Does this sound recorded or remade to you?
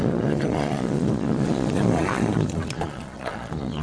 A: remade